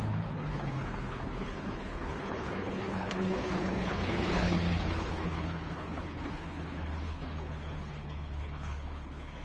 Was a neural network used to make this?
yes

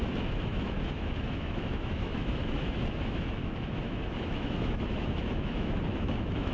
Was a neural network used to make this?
yes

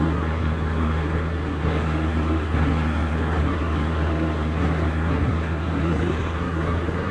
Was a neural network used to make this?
yes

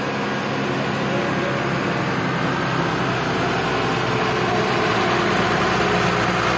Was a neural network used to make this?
no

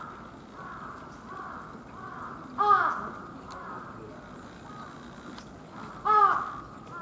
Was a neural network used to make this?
no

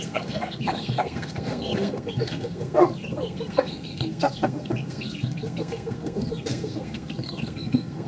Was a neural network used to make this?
yes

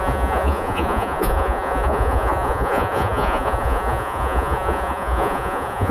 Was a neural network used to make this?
yes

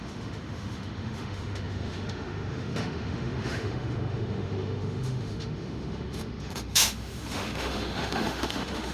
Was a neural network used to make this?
yes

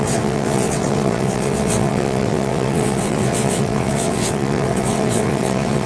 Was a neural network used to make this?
yes